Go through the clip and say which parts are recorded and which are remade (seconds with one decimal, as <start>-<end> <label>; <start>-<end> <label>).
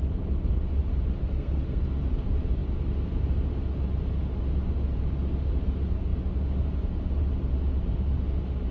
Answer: 0.0-1.2 recorded; 1.2-1.8 remade; 1.8-8.7 recorded